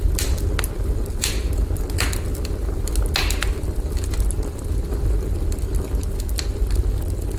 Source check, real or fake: real